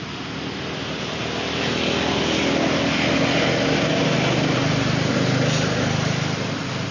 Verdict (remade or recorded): recorded